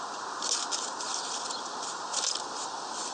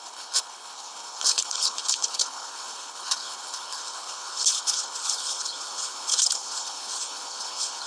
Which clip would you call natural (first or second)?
first